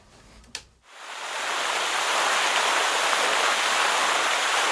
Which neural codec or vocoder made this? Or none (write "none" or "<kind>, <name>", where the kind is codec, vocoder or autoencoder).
none